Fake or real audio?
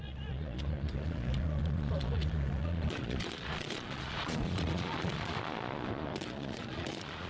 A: fake